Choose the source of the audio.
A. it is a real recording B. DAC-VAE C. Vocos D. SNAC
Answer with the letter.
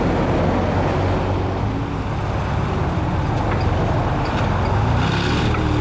A